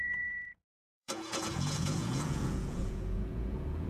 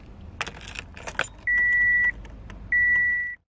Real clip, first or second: second